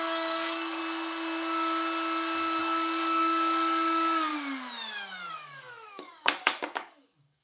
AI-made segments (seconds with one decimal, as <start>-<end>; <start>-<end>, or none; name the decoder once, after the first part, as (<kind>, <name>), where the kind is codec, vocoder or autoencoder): 0.0-0.8 (codec, DAC); 2.6-4.3; 5.3-7.4